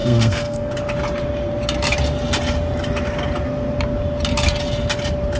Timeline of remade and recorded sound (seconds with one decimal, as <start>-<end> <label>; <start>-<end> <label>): 0.0-0.7 remade; 0.7-5.4 recorded